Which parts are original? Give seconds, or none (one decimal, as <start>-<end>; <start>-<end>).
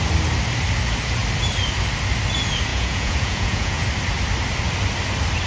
0.0-2.7; 3.8-5.5